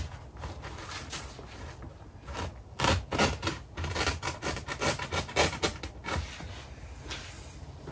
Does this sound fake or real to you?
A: real